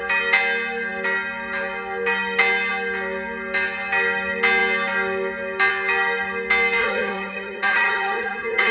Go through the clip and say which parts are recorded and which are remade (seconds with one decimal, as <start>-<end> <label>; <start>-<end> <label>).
0.0-6.8 recorded; 6.8-8.7 remade